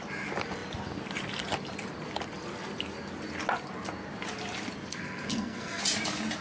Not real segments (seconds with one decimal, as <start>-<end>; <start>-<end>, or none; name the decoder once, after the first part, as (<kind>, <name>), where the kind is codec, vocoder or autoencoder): 4.9-5.8 (codec, SNAC)